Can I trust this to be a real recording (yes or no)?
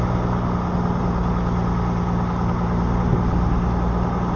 yes